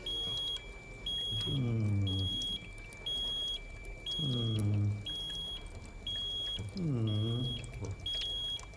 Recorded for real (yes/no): yes